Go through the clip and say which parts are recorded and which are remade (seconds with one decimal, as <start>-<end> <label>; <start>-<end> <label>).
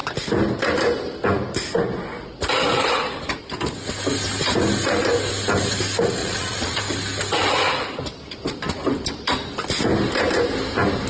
0.0-6.2 recorded; 6.2-6.8 remade; 6.8-11.1 recorded